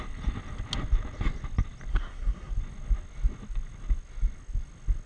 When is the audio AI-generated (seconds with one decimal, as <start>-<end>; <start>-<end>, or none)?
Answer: 1.9-2.5